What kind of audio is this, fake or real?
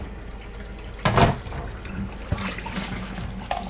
real